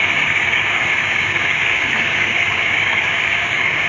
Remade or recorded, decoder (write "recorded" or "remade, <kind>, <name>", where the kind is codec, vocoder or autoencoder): remade, codec, DAC